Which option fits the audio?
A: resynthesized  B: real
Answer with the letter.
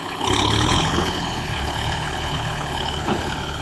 A